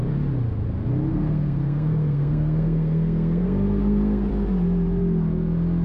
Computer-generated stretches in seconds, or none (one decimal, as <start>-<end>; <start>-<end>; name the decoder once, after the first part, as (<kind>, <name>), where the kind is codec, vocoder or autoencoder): 1.1-4.3 (codec, SNAC)